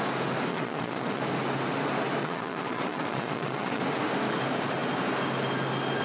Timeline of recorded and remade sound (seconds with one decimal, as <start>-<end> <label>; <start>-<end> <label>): 0.0-0.5 recorded; 0.5-1.2 remade; 1.2-2.2 recorded; 2.2-3.8 remade; 3.8-6.0 recorded